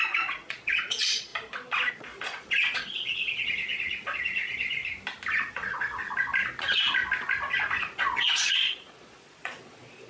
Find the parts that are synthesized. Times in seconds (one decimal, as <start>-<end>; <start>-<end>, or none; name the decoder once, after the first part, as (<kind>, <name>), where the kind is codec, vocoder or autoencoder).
0.0-1.3 (vocoder, Vocos); 1.9-4.8; 5.5-6.0; 7.8-10.1